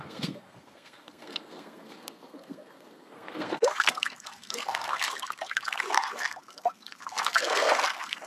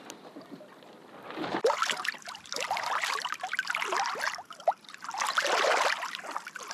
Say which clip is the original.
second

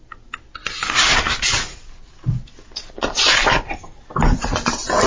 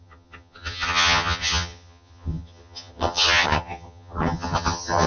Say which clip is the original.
first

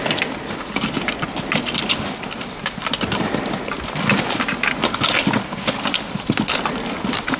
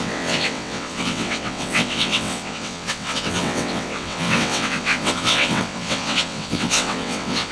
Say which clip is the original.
first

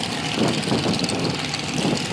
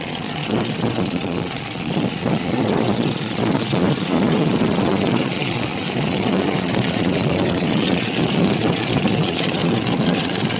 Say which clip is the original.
first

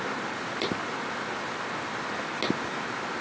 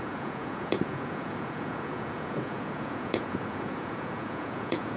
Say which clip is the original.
first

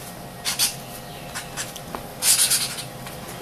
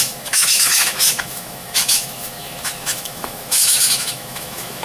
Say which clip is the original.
first